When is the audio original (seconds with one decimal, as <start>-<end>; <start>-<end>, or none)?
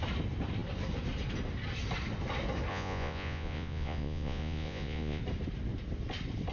0.0-2.7; 5.2-6.5